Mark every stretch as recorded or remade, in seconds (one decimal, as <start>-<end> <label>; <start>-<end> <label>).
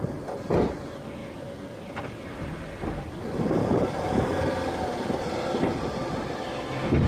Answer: 0.0-7.1 recorded